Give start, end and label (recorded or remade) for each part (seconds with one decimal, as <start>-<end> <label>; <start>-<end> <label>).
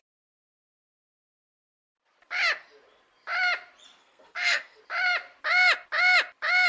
0.0-4.0 recorded; 4.0-4.8 remade; 4.8-6.7 recorded